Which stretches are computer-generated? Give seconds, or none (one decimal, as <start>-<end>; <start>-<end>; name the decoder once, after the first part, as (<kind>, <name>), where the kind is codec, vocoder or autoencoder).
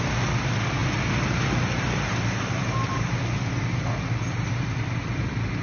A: none